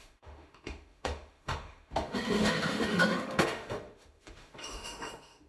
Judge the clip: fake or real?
fake